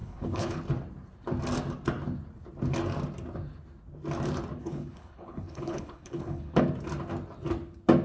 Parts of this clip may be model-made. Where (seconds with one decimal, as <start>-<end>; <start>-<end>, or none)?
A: 0.0-0.6; 4.6-6.6